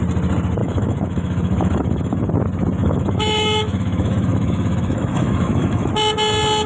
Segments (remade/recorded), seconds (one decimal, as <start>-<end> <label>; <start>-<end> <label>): 0.0-0.6 recorded; 0.6-2.3 remade; 2.3-2.8 recorded; 2.8-5.9 remade; 5.9-6.7 recorded